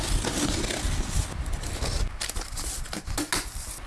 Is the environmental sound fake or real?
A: real